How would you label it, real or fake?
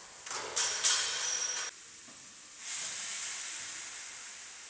real